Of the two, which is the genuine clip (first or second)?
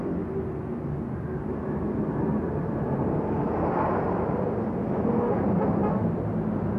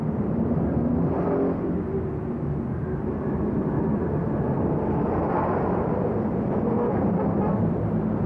first